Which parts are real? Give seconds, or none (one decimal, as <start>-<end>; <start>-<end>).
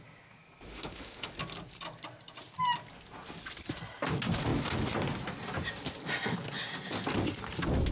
0.0-0.7; 1.3-7.9